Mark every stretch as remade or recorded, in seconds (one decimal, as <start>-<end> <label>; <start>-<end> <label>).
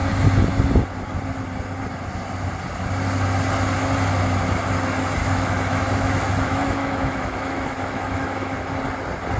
0.0-5.2 recorded; 5.2-8.7 remade; 8.7-9.4 recorded